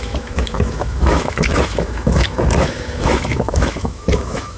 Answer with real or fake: fake